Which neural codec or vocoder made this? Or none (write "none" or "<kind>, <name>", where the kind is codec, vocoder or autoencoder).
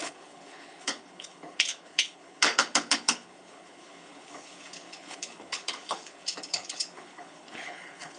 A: codec, HILCodec